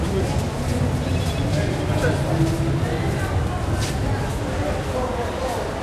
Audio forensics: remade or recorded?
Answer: recorded